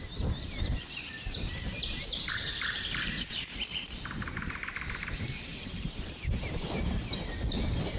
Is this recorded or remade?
remade